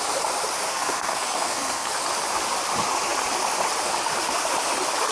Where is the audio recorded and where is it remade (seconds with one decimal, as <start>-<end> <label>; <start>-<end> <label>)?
0.0-0.7 recorded; 0.7-1.9 remade; 1.9-5.1 recorded